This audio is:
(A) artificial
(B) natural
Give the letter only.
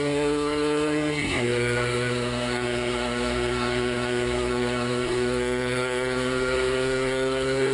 A